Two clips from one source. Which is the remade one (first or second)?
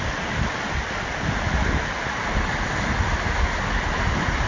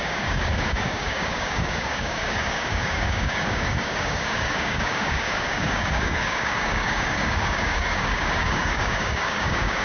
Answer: second